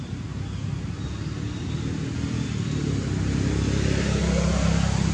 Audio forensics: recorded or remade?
recorded